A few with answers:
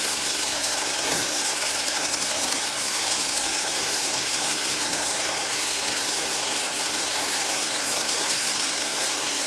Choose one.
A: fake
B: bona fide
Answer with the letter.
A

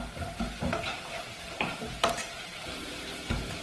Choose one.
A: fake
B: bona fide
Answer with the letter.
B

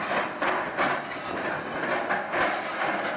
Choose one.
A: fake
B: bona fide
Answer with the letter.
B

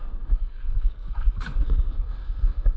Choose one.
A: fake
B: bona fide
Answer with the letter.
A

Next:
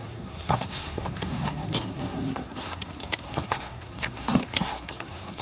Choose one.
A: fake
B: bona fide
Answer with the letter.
A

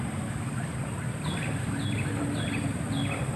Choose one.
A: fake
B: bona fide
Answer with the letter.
B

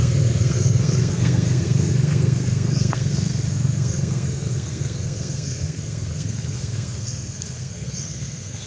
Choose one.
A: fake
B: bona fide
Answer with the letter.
A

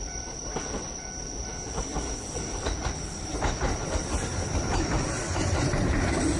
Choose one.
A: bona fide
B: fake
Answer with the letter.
A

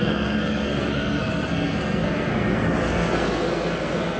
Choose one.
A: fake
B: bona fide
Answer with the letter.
A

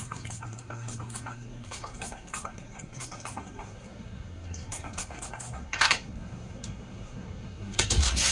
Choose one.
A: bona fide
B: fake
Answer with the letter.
B